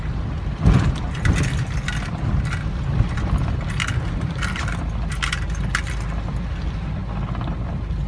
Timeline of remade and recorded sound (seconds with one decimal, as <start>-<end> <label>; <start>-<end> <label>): 0.0-8.1 recorded